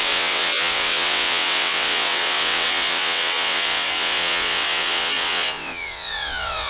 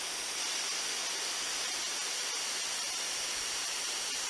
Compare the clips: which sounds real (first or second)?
second